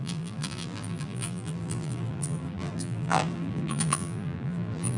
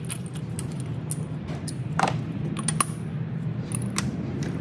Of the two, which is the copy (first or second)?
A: first